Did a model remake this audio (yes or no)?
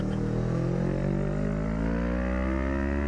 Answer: no